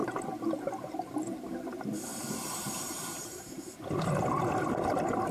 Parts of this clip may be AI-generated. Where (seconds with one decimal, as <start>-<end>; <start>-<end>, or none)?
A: 0.0-1.7; 2.1-3.7